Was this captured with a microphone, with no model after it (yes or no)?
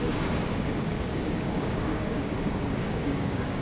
no